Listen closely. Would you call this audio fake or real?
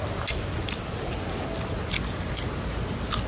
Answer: real